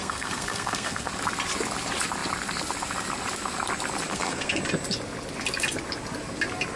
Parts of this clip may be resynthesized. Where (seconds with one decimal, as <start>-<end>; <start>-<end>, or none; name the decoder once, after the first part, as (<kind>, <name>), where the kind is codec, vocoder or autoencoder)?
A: 0.0-1.1 (codec, SNAC); 4.1-4.6